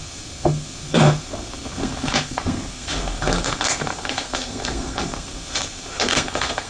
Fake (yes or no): yes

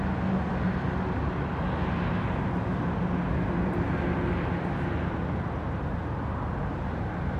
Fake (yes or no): no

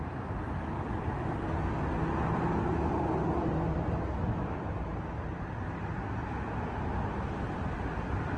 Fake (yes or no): no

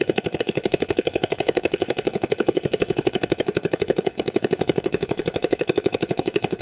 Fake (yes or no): yes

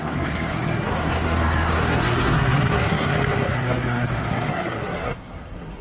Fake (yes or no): yes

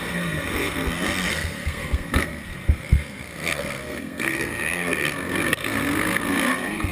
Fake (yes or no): yes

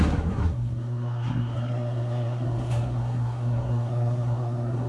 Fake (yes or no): yes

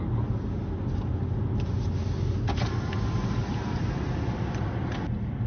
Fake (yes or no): no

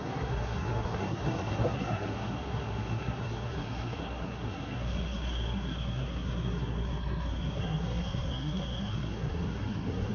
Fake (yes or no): yes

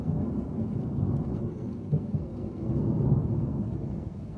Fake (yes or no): yes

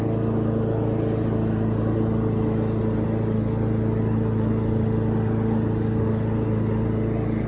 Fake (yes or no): no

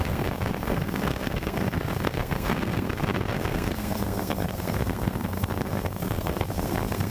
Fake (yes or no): yes